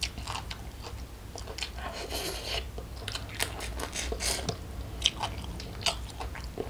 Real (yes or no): yes